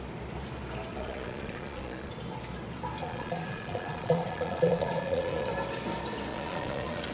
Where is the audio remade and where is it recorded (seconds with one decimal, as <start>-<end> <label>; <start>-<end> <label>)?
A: 0.0-0.9 recorded; 0.9-2.1 remade; 2.1-3.0 recorded; 3.0-5.5 remade; 5.5-6.3 recorded; 6.3-7.1 remade